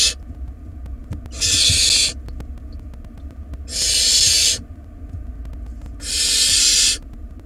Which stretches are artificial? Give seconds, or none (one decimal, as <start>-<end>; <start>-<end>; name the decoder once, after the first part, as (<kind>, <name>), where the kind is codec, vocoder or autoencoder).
none

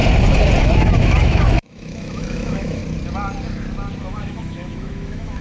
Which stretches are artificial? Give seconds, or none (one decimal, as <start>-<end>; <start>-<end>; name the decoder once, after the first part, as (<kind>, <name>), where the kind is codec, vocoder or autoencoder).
0.6-2.8 (autoencoder, DAC-VAE); 4.0-5.4

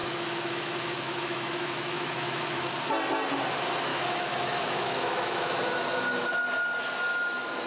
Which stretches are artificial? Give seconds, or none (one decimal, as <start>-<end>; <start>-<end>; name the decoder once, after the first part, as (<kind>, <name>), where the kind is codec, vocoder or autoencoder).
0.0-2.7 (autoencoder, DAC-VAE); 3.9-5.8

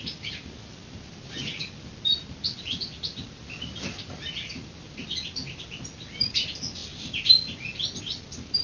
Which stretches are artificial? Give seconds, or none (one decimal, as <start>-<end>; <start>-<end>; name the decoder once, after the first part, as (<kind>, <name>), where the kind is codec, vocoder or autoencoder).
none